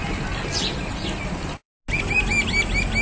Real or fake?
real